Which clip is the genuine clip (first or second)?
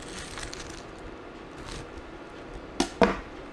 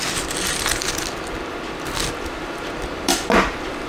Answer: first